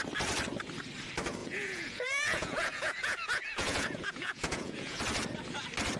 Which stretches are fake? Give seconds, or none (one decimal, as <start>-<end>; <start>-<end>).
1.4-5.0